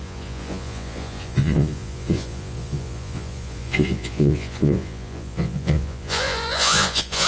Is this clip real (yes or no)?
no